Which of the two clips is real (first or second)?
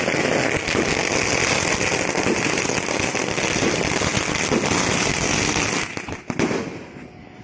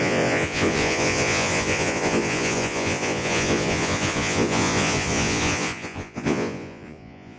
first